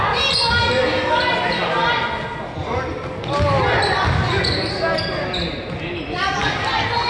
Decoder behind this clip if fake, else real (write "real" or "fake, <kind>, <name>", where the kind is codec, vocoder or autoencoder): real